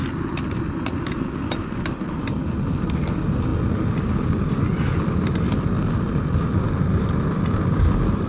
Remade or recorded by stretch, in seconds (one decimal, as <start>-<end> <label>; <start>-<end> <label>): 0.0-8.3 recorded